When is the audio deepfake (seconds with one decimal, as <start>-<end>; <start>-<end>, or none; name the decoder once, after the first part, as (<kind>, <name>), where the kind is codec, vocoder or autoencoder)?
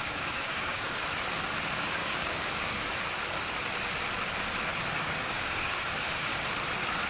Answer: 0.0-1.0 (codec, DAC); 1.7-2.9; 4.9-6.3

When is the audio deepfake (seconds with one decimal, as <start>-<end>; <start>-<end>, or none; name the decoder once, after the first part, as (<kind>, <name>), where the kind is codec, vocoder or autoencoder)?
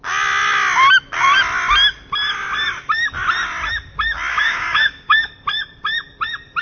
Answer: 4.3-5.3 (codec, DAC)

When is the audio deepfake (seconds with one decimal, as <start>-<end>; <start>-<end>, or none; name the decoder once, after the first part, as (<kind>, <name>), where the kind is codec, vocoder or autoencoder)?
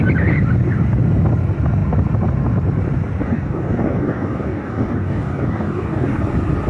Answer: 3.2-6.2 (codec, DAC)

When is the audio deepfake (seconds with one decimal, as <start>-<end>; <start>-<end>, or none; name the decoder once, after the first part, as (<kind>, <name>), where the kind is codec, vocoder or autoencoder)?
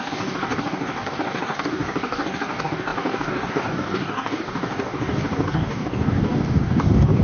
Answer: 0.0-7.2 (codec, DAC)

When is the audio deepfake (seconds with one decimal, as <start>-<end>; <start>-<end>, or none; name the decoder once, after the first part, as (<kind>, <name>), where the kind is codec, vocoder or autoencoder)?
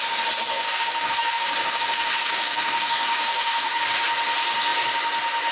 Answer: 0.5-3.8 (codec, DAC)